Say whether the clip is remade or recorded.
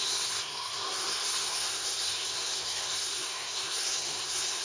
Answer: remade